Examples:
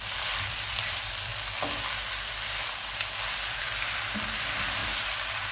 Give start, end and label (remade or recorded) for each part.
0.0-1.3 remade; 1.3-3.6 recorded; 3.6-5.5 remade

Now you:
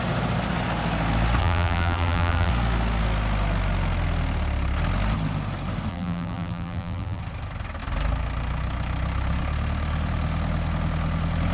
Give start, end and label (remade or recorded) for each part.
0.0-1.4 recorded; 1.4-2.5 remade; 2.5-5.9 recorded; 5.9-7.2 remade; 7.2-11.5 recorded

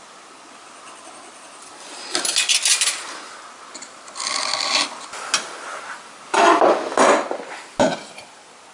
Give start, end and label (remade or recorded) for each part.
0.0-8.7 recorded

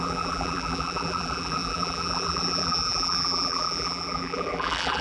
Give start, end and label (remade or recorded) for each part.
0.0-5.0 remade

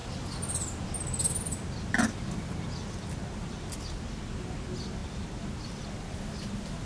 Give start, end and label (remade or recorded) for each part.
0.0-6.8 recorded

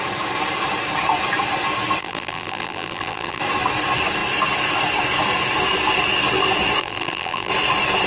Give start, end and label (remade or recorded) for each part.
0.0-2.0 recorded; 2.0-3.4 remade; 3.4-6.8 recorded; 6.8-7.5 remade; 7.5-8.1 recorded

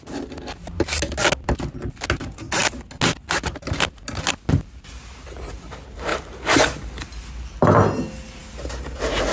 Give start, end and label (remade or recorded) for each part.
0.0-6.1 recorded; 6.1-6.9 remade; 6.9-9.3 recorded